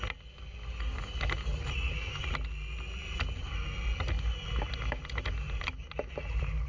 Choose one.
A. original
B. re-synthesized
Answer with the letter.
A